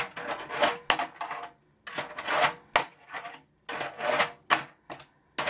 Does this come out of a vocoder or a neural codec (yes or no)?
no